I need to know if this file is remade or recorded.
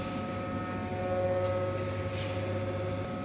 recorded